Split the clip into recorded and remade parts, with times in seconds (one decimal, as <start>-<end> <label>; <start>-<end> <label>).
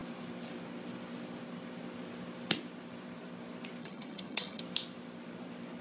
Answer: 0.0-3.8 recorded; 3.8-4.6 remade; 4.6-5.8 recorded